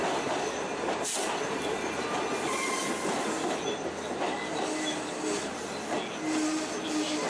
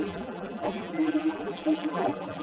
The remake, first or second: second